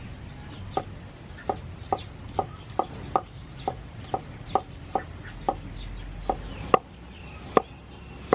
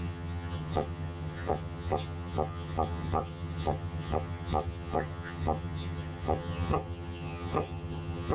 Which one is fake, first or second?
second